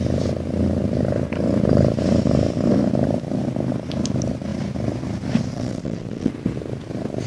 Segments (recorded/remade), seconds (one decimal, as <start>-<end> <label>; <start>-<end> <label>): 0.0-5.5 recorded; 5.5-6.3 remade; 6.3-7.3 recorded